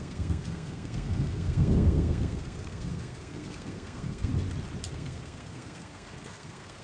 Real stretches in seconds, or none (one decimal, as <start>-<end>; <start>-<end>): 4.3-4.9